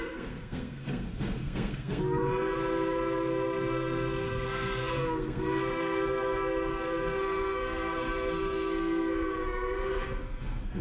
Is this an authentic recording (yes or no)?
no